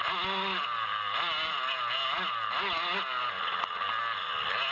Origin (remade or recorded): recorded